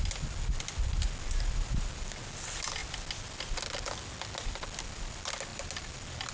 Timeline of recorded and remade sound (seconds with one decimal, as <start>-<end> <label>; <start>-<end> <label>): 0.0-6.3 recorded

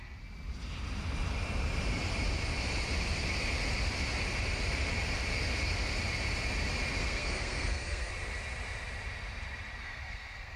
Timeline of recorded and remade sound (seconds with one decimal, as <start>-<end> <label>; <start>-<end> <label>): 0.0-7.0 recorded; 7.0-8.1 remade; 8.1-9.8 recorded; 9.8-10.6 remade

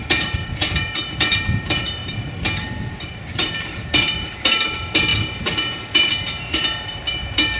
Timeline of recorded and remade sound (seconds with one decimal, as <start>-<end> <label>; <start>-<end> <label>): 0.0-2.0 remade; 2.0-3.2 recorded; 3.2-7.6 remade